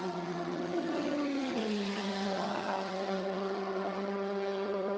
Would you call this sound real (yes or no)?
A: no